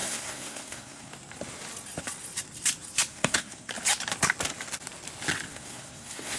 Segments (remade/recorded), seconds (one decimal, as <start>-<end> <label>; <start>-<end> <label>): 0.0-1.1 remade; 1.1-3.1 recorded; 3.1-3.7 remade; 3.7-5.5 recorded; 5.5-6.4 remade